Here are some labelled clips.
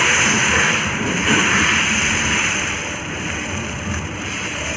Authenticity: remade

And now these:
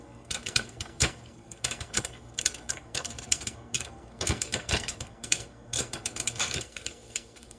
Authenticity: remade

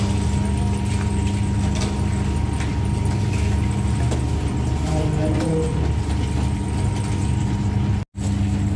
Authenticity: recorded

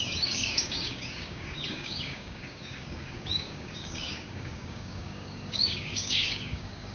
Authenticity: remade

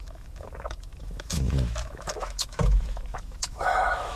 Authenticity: remade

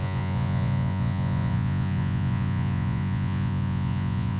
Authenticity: remade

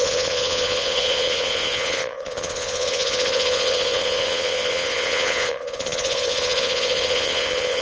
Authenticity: remade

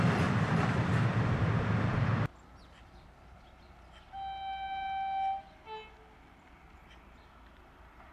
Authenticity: recorded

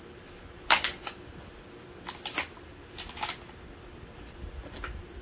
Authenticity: recorded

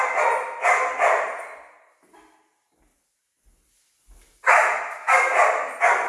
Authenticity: recorded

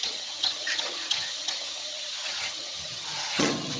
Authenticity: remade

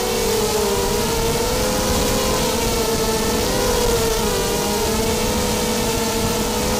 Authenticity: recorded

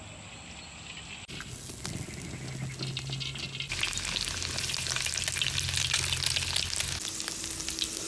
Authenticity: recorded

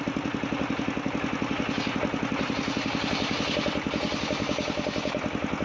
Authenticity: recorded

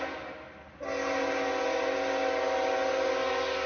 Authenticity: recorded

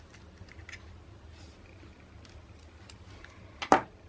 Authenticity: recorded